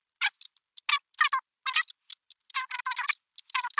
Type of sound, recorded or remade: recorded